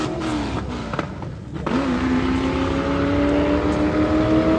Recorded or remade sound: recorded